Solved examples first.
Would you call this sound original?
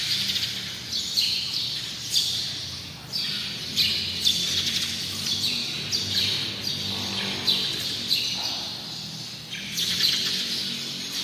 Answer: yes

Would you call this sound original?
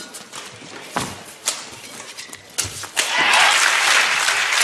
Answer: yes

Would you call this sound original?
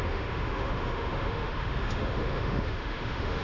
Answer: no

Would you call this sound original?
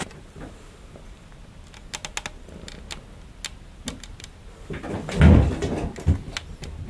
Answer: yes